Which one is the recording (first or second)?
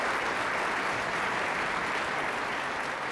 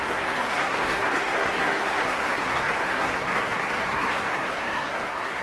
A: first